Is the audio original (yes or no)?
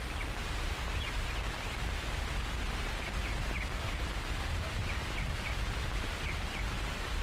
yes